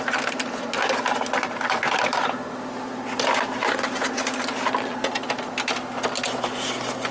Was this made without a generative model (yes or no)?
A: yes